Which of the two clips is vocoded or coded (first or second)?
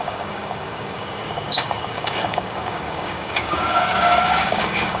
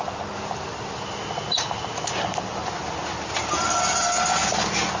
first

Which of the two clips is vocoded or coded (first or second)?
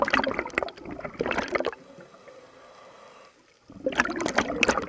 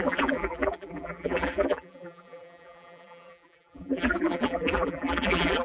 second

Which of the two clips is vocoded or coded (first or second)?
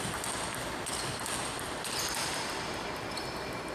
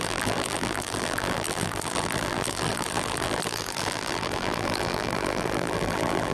second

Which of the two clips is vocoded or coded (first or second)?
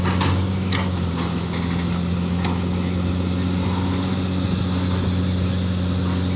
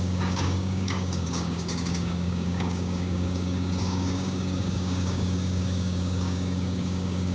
second